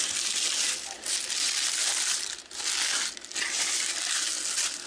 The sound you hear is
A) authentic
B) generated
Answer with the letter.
A